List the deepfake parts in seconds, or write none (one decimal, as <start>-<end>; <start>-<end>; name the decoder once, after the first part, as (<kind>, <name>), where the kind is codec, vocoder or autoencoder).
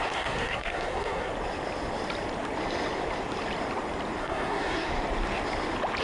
0.0-1.3 (codec, SNAC); 4.2-4.9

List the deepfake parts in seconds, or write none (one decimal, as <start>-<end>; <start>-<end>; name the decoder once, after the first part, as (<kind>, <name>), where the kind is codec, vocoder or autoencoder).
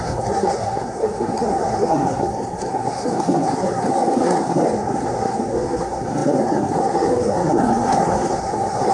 0.0-8.9 (codec, SNAC)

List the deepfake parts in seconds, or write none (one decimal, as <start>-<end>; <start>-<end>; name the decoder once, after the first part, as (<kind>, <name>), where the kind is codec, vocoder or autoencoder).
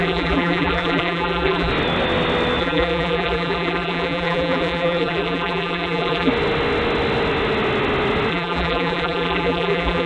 0.0-1.7 (vocoder, BigVGAN v2); 2.6-6.3; 8.3-10.1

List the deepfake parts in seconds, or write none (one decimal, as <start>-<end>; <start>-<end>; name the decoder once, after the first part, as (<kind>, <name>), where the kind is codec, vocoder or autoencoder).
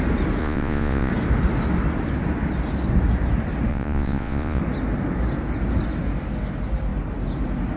0.4-1.1 (vocoder, Vocos); 3.7-4.6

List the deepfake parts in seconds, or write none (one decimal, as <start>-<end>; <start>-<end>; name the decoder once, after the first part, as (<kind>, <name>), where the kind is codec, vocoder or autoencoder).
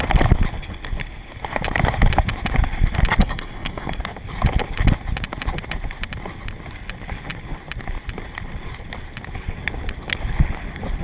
3.2-4.0 (codec, DAC)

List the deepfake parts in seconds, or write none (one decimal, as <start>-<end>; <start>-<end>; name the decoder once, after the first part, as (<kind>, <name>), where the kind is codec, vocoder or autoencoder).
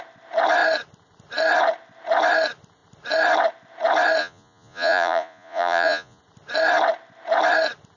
4.2-6.2 (vocoder, Vocos)